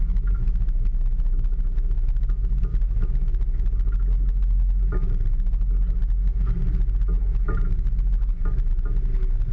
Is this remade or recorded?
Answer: recorded